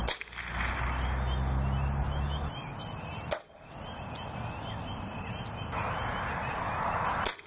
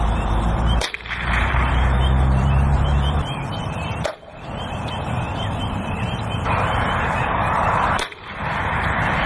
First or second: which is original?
first